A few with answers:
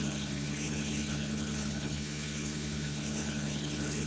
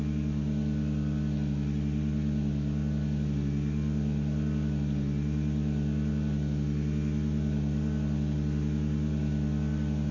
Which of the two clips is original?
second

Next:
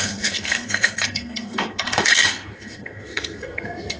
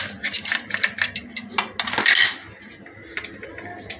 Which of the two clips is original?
second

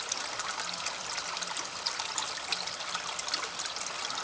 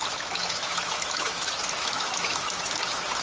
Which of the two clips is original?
first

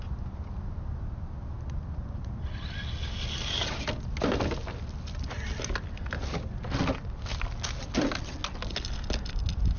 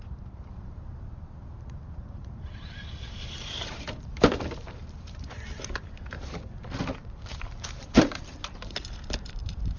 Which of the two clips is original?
first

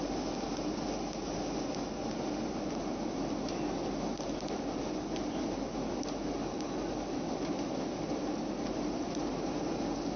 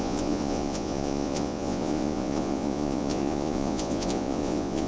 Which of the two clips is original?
first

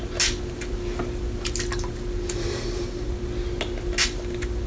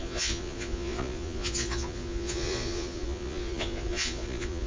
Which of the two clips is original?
first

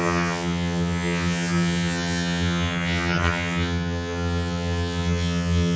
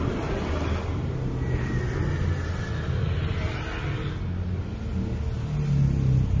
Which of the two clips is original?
second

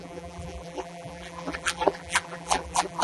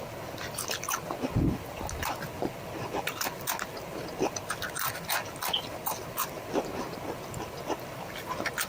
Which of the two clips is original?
second